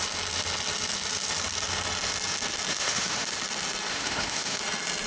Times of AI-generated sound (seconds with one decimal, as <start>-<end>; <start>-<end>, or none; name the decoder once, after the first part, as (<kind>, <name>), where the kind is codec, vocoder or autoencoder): 2.7-3.3 (autoencoder, DAC-VAE); 3.9-4.6